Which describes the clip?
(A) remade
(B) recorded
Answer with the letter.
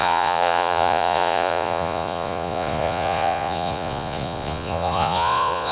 A